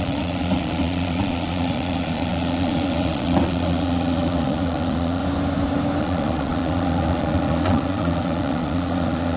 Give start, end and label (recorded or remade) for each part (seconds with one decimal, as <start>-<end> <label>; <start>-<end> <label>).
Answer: 0.0-5.2 remade; 5.2-6.0 recorded; 6.0-9.4 remade